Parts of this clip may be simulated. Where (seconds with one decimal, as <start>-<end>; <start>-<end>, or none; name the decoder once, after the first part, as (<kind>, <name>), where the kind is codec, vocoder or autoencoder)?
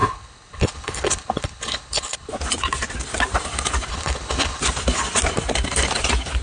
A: 0.0-2.3 (codec, HILCodec); 3.9-4.6